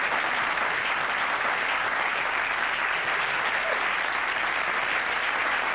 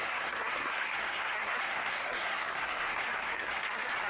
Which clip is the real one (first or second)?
first